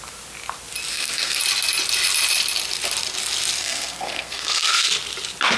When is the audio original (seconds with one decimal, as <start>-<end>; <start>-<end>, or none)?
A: 0.0-0.9; 1.4-3.6; 4.9-5.6